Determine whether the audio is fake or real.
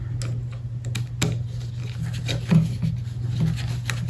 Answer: real